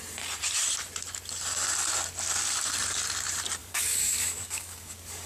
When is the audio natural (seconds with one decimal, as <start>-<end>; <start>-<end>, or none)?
0.0-3.6